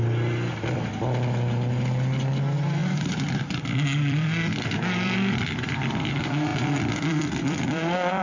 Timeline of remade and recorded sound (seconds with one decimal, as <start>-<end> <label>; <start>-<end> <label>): 0.0-2.8 recorded; 2.8-6.1 remade; 6.1-6.5 recorded; 6.5-8.2 remade